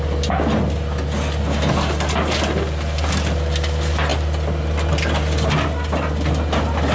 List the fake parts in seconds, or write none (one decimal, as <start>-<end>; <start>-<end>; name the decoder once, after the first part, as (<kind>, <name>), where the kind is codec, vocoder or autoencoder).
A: none